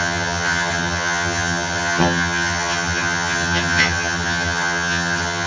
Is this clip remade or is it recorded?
remade